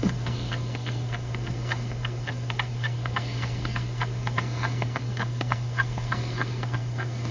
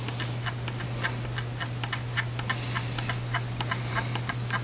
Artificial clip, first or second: first